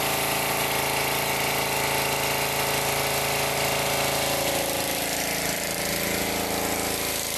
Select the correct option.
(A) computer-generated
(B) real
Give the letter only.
B